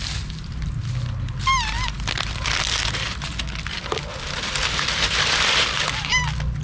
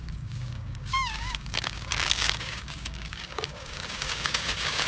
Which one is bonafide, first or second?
first